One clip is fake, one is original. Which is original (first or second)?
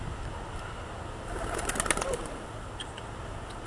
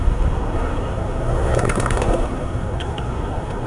first